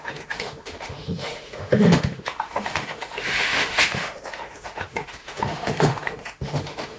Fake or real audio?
fake